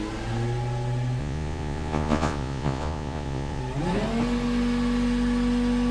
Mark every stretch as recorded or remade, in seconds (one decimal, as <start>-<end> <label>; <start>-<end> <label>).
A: 0.0-1.2 recorded; 1.2-3.6 remade; 3.6-5.9 recorded